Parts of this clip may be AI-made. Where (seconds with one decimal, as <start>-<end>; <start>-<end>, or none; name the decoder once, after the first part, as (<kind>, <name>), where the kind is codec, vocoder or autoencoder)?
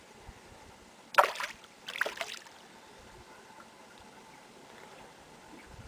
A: none